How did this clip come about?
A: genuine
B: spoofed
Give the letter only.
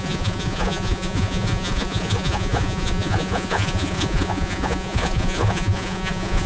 B